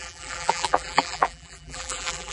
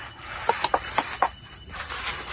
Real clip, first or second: second